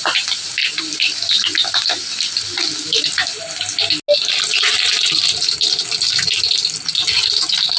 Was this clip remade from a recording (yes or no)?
no